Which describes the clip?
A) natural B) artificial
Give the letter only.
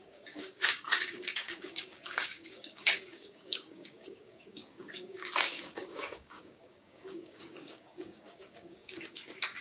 B